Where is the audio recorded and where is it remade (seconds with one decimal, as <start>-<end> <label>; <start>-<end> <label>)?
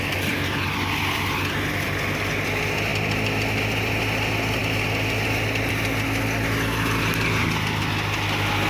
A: 0.0-8.7 recorded